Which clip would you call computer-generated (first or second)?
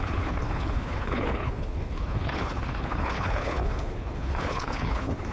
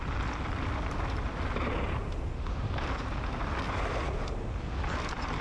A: first